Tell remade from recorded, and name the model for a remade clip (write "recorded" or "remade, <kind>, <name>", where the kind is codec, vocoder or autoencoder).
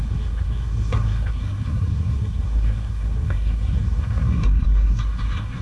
remade, codec, SNAC